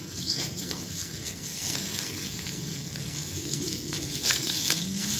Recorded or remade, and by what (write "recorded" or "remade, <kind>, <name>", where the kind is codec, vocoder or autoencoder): remade, codec, SNAC